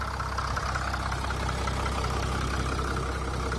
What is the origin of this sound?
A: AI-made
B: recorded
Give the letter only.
B